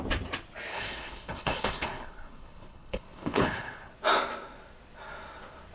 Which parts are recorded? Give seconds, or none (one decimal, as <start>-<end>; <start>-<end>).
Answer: 0.0-0.7; 3.9-5.7